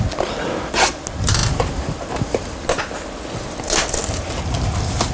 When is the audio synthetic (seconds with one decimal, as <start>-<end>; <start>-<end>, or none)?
none